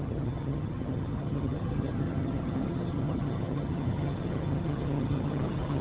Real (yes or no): no